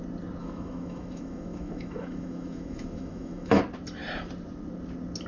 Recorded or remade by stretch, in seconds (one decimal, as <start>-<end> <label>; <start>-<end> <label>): 0.0-0.4 recorded; 0.4-3.6 remade; 3.6-5.3 recorded